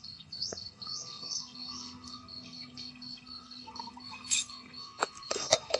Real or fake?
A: fake